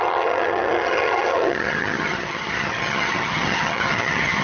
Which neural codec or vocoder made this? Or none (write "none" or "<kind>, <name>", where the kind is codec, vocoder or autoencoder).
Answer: vocoder, HiFi-GAN